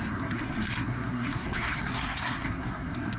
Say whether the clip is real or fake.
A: fake